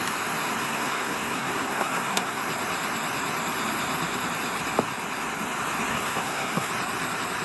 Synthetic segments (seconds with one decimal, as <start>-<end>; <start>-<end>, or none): 0.6-2.4; 5.9-6.7